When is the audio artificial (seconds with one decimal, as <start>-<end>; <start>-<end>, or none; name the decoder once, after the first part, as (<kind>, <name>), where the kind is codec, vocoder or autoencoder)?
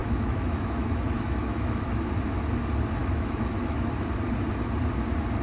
0.0-2.1 (autoencoder, DAC-VAE); 3.0-3.9